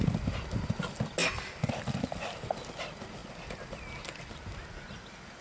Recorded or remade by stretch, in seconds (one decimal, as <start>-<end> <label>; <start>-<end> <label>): 0.0-5.4 recorded